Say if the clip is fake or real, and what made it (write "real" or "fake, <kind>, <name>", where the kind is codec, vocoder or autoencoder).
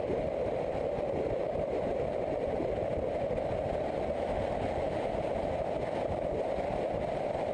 real